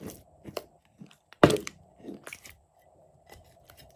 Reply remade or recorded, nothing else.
remade